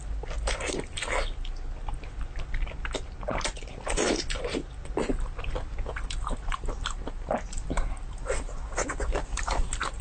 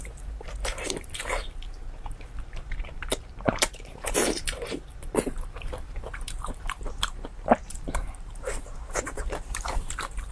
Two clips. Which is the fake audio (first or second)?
second